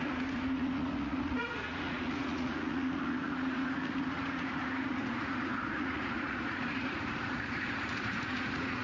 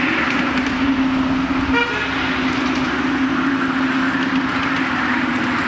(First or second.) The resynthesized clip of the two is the first